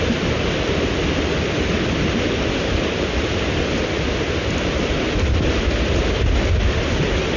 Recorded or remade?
recorded